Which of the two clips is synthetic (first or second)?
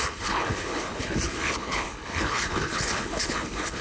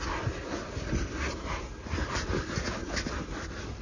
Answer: first